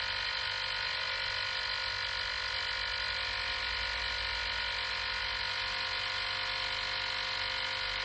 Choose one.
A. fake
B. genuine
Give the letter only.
B